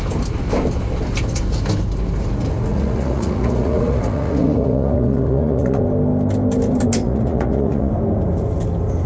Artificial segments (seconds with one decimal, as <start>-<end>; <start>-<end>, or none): 2.7-5.8; 7.0-7.9